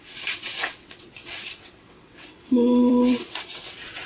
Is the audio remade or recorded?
remade